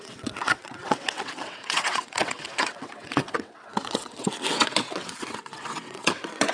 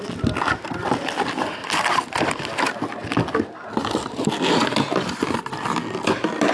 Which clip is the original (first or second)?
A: second